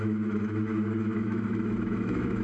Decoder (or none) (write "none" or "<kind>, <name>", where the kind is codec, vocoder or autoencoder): autoencoder, DAC-VAE